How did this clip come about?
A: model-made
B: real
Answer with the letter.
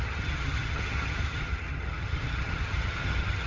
A